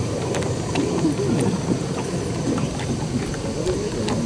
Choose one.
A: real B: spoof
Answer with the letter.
A